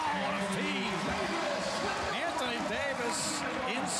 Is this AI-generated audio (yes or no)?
no